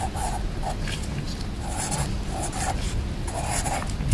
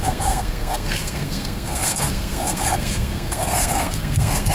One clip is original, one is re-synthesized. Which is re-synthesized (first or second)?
second